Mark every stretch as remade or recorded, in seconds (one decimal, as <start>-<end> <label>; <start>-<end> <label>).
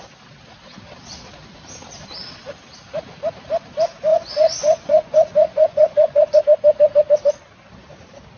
0.0-4.1 recorded; 4.1-6.4 remade; 6.4-8.4 recorded